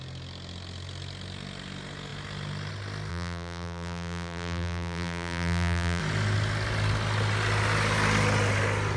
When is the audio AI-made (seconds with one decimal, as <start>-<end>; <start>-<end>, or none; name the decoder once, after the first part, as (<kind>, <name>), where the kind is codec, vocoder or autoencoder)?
3.1-6.0 (vocoder, BigVGAN v2)